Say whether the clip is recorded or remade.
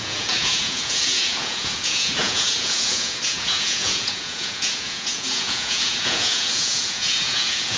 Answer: remade